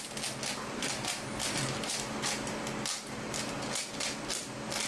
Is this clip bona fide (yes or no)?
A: yes